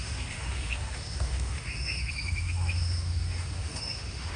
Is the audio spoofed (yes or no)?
yes